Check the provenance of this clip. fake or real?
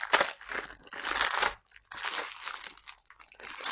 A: real